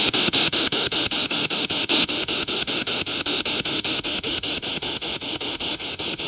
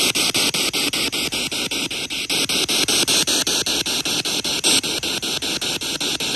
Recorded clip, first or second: second